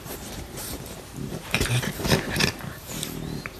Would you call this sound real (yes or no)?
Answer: no